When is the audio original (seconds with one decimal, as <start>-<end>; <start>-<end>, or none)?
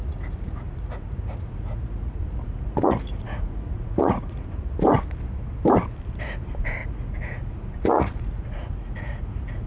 4.6-6.8